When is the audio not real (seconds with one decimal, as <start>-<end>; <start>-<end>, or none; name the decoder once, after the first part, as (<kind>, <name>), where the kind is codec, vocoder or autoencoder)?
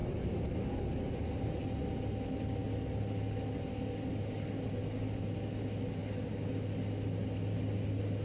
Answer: none